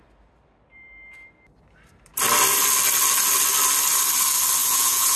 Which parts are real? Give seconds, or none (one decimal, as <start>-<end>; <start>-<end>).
0.0-4.6